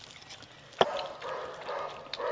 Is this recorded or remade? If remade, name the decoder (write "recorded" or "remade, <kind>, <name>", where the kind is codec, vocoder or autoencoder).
recorded